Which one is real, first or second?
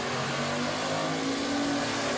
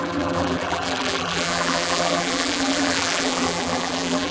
first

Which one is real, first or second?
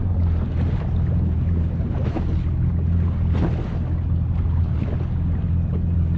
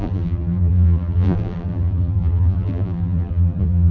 first